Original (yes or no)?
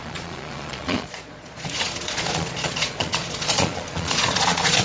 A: no